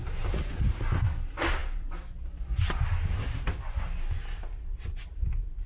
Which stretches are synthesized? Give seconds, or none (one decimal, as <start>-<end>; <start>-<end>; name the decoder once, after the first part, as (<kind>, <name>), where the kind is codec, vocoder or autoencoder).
none